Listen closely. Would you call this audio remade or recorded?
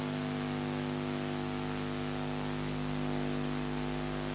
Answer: recorded